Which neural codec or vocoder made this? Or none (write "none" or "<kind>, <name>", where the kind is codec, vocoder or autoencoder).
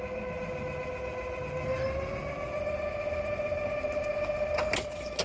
none